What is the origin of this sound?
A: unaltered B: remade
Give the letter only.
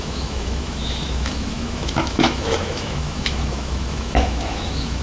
B